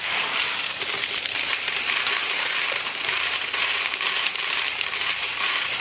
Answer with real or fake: fake